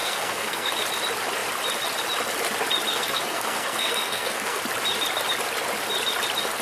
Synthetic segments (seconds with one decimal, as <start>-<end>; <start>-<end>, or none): 0.0-0.7; 2.9-4.6